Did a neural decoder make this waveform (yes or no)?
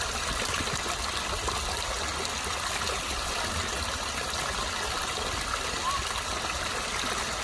no